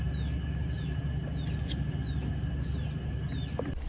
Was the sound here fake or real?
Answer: real